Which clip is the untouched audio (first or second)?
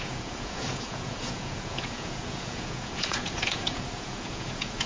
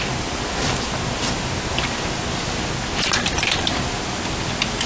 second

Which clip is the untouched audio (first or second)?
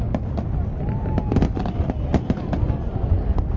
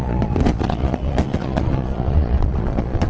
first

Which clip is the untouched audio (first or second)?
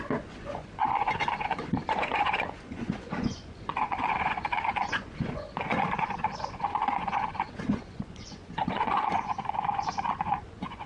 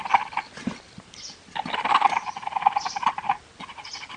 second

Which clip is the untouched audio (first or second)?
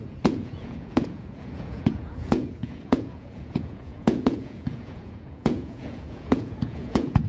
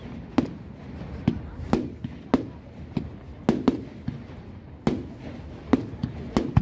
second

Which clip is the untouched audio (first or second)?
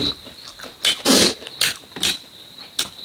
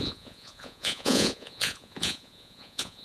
first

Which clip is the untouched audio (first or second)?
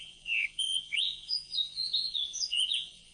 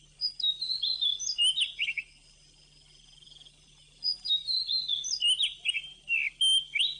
second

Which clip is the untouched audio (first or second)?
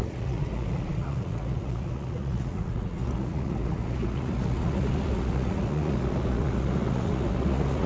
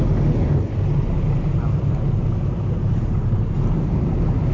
second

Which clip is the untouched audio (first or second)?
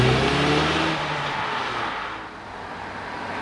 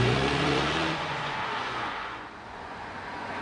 first